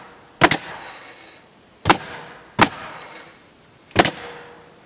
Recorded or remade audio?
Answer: recorded